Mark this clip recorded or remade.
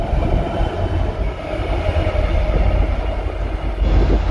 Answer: recorded